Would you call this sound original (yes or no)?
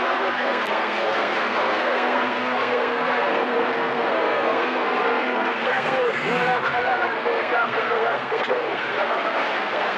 no